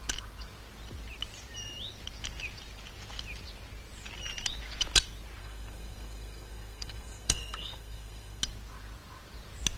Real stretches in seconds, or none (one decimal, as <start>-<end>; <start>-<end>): 0.0-5.4; 8.4-9.8